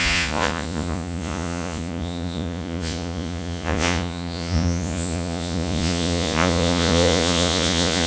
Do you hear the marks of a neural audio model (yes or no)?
yes